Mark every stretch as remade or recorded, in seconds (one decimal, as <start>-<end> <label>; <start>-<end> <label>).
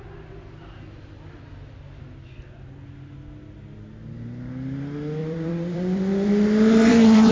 0.0-5.2 recorded; 5.2-7.3 remade